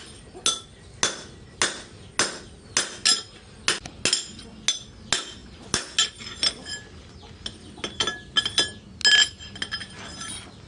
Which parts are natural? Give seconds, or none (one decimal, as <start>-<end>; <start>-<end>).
0.0-10.7